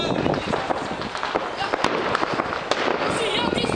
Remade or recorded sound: recorded